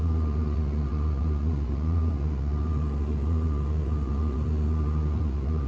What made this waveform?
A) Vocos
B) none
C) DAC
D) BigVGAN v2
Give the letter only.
A